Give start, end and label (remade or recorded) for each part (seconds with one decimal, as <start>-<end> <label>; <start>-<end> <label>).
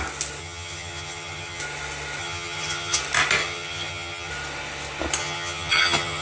0.0-0.4 recorded; 0.4-1.6 remade; 1.6-2.2 recorded; 2.2-3.0 remade; 3.0-3.4 recorded; 3.4-4.3 remade; 4.3-5.2 recorded; 5.2-6.2 remade